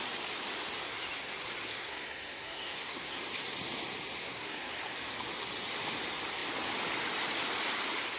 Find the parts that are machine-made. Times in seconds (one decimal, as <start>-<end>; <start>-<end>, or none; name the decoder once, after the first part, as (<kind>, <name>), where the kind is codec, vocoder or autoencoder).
1.8-3.2 (codec, SNAC); 4.2-4.7